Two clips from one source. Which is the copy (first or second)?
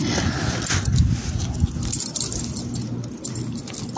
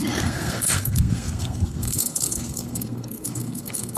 second